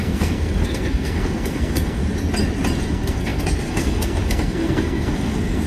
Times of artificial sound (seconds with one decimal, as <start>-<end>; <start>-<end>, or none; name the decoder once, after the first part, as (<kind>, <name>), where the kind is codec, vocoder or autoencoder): 0.0-2.0 (codec, SNAC); 2.9-5.7